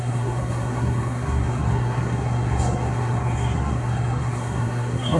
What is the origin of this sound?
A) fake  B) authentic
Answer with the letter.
A